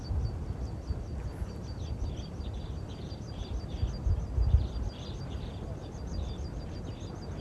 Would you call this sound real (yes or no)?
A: yes